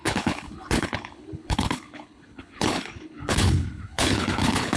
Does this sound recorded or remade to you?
remade